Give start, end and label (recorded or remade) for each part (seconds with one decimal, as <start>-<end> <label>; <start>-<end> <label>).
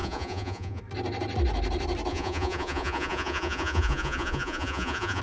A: 0.0-0.8 remade; 0.8-2.1 recorded; 2.1-5.2 remade